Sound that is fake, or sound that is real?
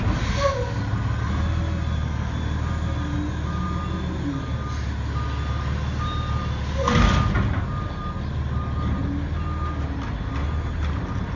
real